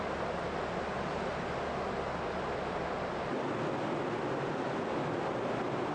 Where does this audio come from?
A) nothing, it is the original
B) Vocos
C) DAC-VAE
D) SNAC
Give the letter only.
A